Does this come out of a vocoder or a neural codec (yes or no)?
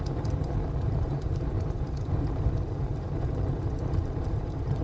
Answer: yes